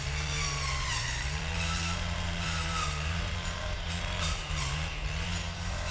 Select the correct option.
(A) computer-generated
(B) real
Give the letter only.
A